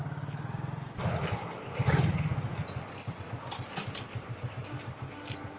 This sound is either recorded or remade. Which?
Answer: recorded